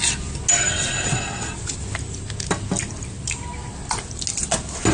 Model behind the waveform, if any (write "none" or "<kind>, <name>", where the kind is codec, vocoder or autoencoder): none